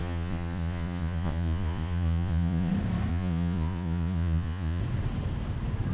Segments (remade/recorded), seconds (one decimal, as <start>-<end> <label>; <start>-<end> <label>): 0.0-2.7 remade; 2.7-3.1 recorded; 3.1-4.8 remade; 4.8-5.9 recorded